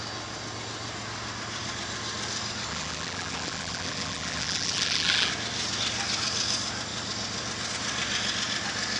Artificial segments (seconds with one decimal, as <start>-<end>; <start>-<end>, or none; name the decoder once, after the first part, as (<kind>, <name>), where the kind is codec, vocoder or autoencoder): 2.7-5.3 (vocoder, BigVGAN v2)